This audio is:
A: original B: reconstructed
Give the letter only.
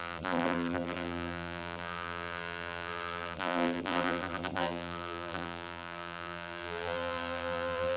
B